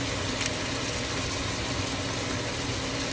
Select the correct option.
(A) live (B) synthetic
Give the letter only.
A